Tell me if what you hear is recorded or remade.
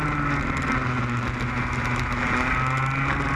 recorded